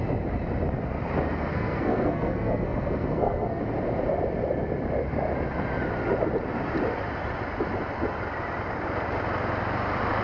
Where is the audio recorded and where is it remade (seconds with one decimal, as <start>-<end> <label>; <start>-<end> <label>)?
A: 0.0-1.5 recorded; 1.5-3.6 remade; 3.6-10.2 recorded